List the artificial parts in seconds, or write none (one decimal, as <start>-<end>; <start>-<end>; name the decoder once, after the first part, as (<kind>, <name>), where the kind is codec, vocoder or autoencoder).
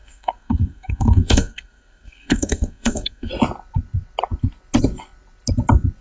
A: 0.0-3.3 (codec, SNAC)